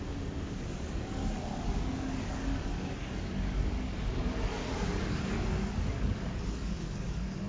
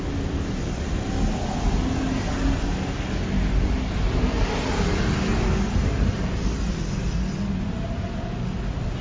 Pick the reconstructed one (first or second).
first